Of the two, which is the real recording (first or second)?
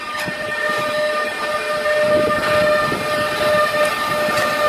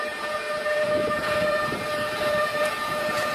first